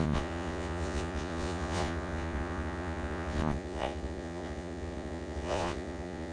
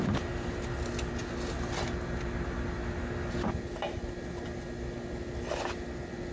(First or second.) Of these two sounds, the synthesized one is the first